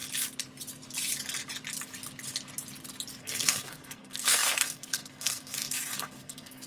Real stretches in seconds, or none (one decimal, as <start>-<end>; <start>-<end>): 0.0-3.2